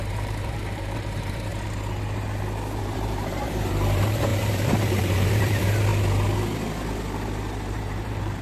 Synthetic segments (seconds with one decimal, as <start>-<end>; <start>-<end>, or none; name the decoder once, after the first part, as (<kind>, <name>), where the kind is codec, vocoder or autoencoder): 0.0-1.5 (vocoder, BigVGAN v2); 2.8-5.9; 7.7-8.4

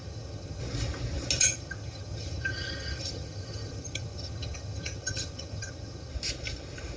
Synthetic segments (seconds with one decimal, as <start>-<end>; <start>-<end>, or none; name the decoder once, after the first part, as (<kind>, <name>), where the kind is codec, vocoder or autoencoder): 0.0-0.6 (vocoder, HiFi-GAN); 1.4-6.1